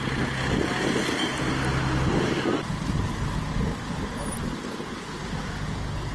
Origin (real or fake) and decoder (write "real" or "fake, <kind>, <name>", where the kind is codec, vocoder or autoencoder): real